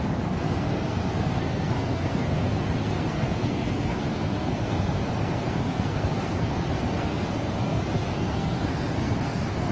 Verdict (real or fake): fake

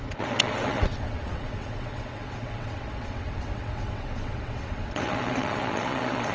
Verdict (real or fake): fake